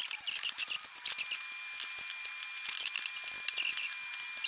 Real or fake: real